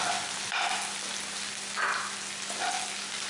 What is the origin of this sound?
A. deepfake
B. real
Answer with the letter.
B